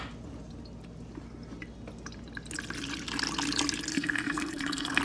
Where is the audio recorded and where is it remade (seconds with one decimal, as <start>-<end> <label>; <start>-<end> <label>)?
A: 0.0-3.9 recorded; 3.9-5.0 remade